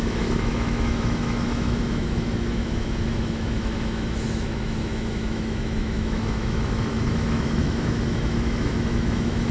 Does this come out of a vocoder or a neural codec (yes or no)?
yes